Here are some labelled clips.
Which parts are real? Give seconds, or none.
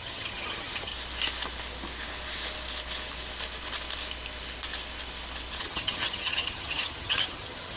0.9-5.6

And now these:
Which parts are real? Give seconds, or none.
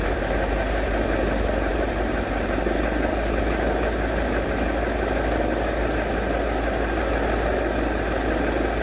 0.0-8.8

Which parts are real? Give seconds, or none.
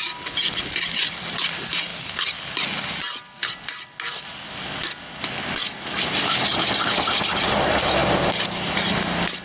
0.0-9.4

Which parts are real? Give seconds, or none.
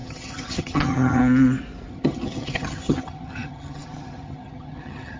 1.2-1.9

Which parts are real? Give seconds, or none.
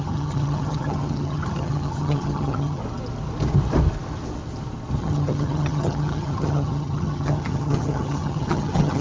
2.8-5.0